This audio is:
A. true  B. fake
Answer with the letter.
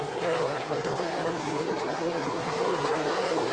B